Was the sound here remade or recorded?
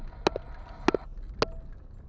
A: recorded